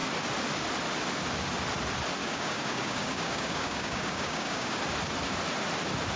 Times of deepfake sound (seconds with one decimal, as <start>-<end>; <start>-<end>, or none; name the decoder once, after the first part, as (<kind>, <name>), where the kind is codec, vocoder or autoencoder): 2.2-4.8 (codec, DAC)